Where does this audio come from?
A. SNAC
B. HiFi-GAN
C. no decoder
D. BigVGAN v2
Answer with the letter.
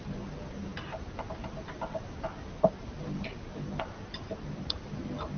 C